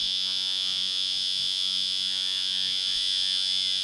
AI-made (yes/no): yes